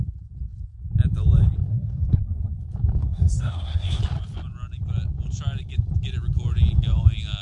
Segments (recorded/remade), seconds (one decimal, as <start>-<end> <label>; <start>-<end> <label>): 0.0-1.7 recorded; 1.7-2.6 remade; 2.6-3.0 recorded; 3.0-4.0 remade; 4.0-7.4 recorded